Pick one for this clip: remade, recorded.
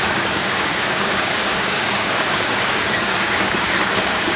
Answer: remade